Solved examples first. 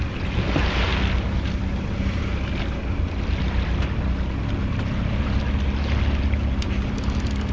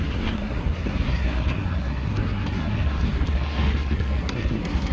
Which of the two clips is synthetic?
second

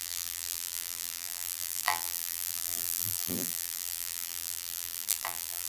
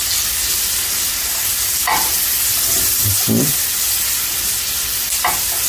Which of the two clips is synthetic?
first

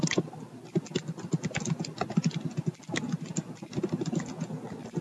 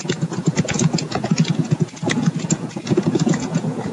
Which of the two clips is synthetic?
second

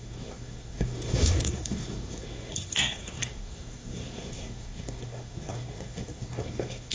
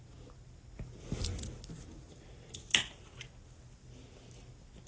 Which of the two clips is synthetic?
first